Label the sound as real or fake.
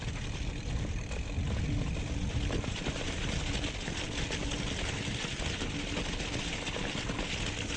real